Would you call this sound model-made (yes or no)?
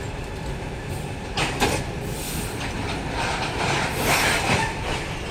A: yes